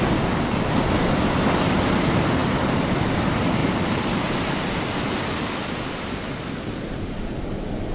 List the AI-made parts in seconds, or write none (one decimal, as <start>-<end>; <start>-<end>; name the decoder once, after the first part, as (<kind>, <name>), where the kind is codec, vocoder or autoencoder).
none